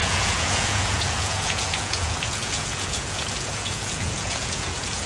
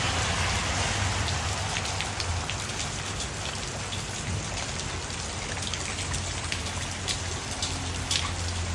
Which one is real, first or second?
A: second